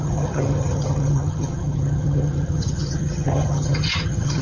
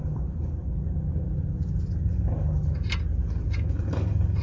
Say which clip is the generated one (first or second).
first